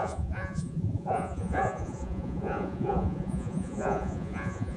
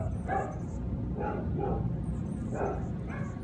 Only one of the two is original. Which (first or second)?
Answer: second